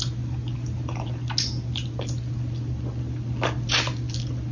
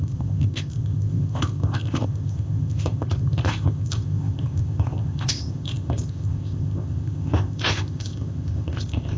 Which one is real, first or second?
first